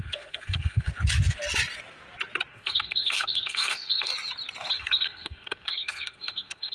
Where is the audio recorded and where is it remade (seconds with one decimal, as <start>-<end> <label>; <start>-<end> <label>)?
0.0-0.9 remade; 0.9-2.5 recorded; 2.5-4.1 remade; 4.1-4.7 recorded; 4.7-6.7 remade